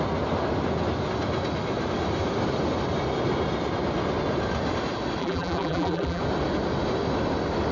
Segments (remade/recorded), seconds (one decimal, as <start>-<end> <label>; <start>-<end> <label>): 0.0-5.2 recorded; 5.2-6.2 remade; 6.2-7.7 recorded